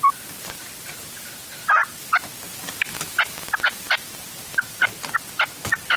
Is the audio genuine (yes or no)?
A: yes